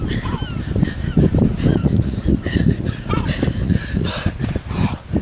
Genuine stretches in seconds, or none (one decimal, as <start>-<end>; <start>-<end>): 0.0-1.7; 3.1-3.6; 4.2-5.2